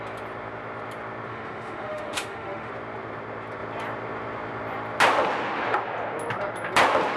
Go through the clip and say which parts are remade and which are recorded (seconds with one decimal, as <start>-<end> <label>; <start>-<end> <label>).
0.0-1.3 recorded; 1.3-2.7 remade; 2.7-7.2 recorded